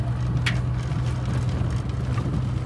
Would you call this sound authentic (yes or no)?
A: yes